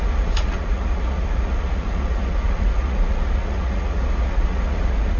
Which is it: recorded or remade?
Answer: remade